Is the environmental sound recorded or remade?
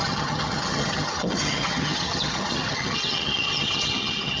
remade